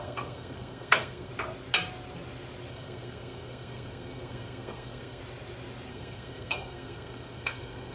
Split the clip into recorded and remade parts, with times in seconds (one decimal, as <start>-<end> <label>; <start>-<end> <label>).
0.0-1.3 remade; 1.3-2.7 recorded; 2.7-5.2 remade; 5.2-5.9 recorded; 5.9-7.9 remade